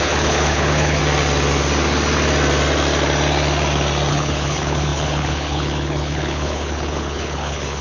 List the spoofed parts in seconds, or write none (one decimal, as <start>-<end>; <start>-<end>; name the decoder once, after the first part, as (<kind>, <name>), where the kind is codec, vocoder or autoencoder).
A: 0.0-1.0 (codec, HILCodec); 4.1-7.8